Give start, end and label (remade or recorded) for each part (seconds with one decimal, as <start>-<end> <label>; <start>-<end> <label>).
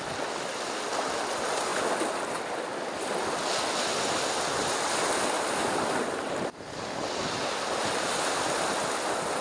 0.0-9.4 recorded